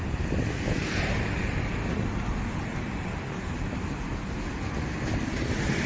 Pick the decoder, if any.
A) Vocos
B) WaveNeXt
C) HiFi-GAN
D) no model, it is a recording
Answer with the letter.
D